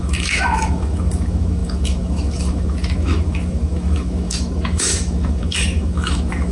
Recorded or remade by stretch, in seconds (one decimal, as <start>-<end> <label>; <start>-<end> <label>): 0.0-6.5 remade